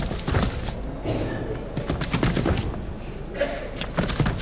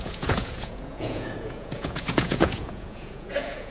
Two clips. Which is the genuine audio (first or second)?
first